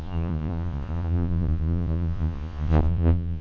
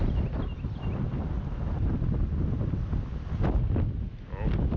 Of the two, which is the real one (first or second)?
second